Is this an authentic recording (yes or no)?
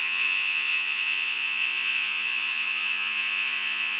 no